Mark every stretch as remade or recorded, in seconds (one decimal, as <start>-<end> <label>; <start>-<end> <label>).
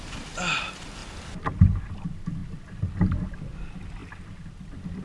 0.0-5.0 recorded